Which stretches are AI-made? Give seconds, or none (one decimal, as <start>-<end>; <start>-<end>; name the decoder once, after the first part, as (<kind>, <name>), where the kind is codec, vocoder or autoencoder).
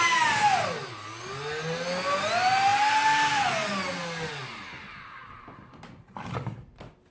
none